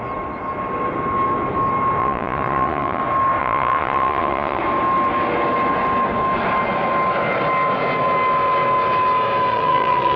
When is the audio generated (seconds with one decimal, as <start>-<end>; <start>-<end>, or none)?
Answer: 2.0-3.0; 3.4-4.6; 9.5-10.2